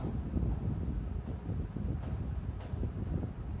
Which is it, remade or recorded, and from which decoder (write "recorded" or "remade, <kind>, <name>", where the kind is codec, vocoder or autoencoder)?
recorded